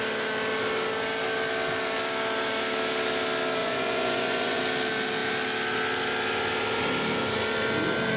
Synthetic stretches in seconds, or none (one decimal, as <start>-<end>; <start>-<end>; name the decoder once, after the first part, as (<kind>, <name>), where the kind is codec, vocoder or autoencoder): 3.6-4.6 (vocoder, Vocos)